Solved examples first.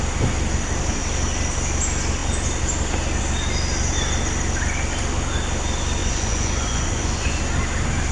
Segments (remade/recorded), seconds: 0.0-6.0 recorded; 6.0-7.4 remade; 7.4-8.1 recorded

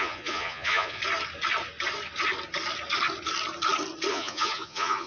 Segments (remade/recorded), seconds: 0.0-1.0 remade; 1.0-4.1 recorded; 4.1-5.1 remade

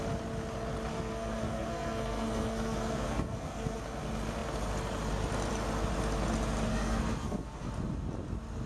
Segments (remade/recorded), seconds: 0.0-0.9 recorded; 0.9-3.8 remade; 3.8-6.7 recorded; 6.7-7.7 remade; 7.7-8.7 recorded